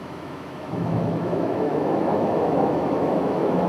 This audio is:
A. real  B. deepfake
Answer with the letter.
B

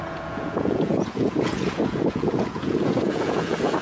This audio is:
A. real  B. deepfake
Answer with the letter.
B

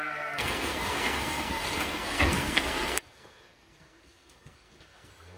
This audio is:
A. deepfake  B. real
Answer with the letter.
A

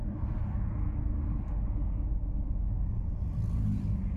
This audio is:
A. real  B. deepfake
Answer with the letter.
A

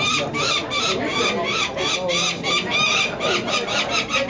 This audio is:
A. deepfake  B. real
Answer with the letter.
B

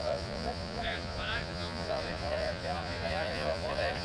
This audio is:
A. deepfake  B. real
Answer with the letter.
A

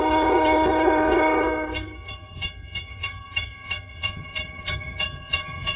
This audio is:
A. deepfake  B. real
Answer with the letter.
A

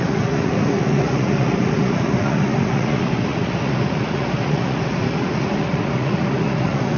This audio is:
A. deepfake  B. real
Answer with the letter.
A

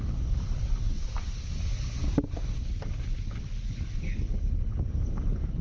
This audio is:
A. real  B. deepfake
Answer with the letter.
A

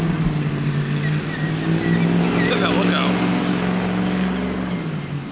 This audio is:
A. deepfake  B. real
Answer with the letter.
B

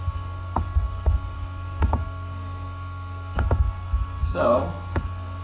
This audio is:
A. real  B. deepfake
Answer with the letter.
B